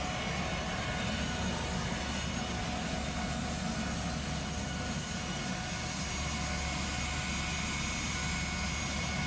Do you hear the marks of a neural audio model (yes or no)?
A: no